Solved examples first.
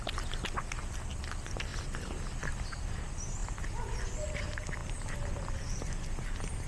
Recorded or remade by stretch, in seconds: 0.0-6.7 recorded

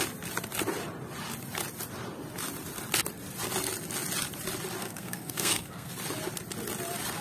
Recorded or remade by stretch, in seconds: 0.0-4.8 recorded; 4.8-5.9 remade; 5.9-7.2 recorded

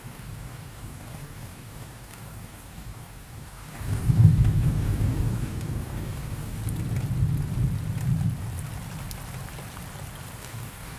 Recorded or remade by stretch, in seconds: 0.0-6.6 remade; 6.6-10.4 recorded; 10.4-11.0 remade

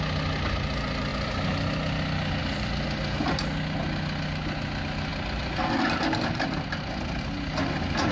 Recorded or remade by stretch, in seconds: 0.0-8.1 recorded

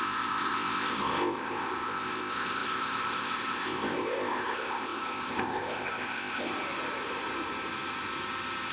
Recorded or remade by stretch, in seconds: 0.0-6.5 remade; 6.5-8.7 recorded

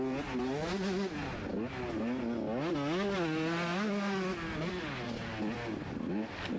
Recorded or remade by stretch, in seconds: 0.0-6.6 recorded

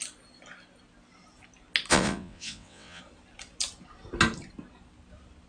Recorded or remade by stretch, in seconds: 0.0-1.9 recorded; 1.9-3.0 remade; 3.0-5.5 recorded